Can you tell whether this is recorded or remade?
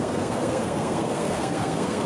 remade